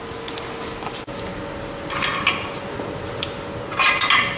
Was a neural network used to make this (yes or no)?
no